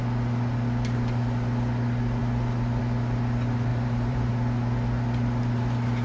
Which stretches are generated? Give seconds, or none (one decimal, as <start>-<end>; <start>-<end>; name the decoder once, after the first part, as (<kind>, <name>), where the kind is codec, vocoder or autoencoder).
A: 3.7-4.3 (vocoder, BigVGAN v2)